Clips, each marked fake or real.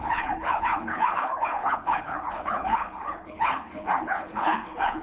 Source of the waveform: fake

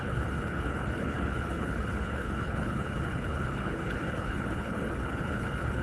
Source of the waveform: fake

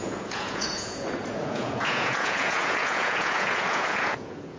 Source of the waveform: fake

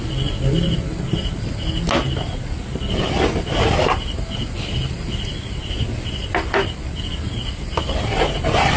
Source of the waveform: real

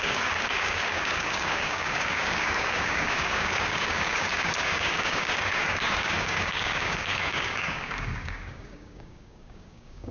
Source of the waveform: fake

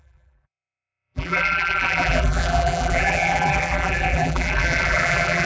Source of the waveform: fake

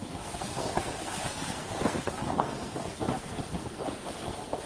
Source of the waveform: fake